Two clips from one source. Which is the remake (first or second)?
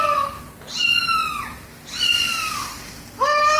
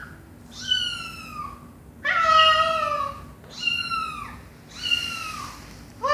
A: first